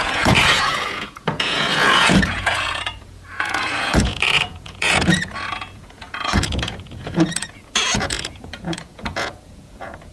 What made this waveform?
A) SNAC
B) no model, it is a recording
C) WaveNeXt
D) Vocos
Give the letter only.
D